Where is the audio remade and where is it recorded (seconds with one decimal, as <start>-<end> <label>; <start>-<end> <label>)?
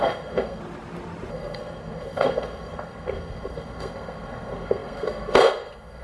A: 0.0-0.6 remade; 0.6-1.3 recorded; 1.3-6.0 remade